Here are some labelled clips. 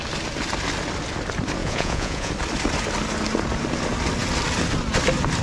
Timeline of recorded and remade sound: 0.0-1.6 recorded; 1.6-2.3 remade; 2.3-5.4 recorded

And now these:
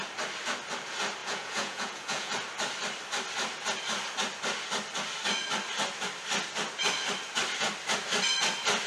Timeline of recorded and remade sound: 0.0-1.2 recorded; 1.2-2.3 remade; 2.3-8.9 recorded

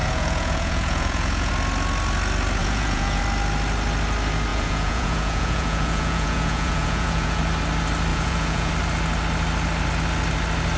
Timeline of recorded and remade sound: 0.0-1.5 remade; 1.5-2.6 recorded; 2.6-3.2 remade; 3.2-4.5 recorded; 4.5-7.4 remade; 7.4-8.1 recorded; 8.1-8.7 remade; 8.7-10.8 recorded

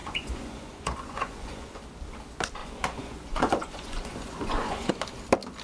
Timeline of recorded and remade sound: 0.0-1.8 remade; 1.8-2.6 recorded; 2.6-4.9 remade; 4.9-5.6 recorded

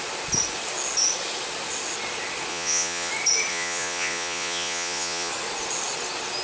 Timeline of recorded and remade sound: 0.0-2.5 recorded; 2.5-3.1 remade; 3.1-3.5 recorded; 3.5-5.3 remade; 5.3-6.4 recorded

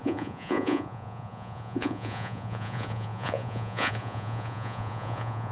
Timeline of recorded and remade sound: 0.0-5.5 remade

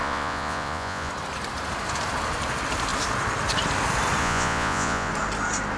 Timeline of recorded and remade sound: 0.0-1.1 remade; 1.1-4.2 recorded; 4.2-5.1 remade; 5.1-5.8 recorded